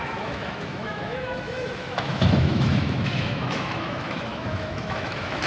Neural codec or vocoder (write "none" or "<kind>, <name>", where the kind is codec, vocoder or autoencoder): autoencoder, DAC-VAE